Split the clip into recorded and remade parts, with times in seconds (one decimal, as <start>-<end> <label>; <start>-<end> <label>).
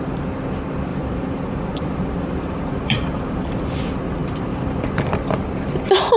0.0-0.9 recorded; 0.9-3.8 remade; 3.8-4.2 recorded; 4.2-4.8 remade; 4.8-6.2 recorded